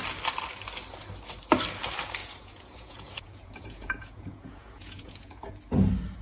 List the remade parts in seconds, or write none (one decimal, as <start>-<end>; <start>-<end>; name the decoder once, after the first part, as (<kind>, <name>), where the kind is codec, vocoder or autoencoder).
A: 2.2-5.5 (vocoder, Vocos)